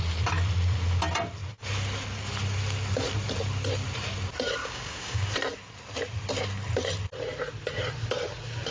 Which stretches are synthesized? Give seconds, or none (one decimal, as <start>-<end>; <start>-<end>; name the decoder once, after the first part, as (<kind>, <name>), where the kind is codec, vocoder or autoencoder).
4.6-5.3 (codec, DAC)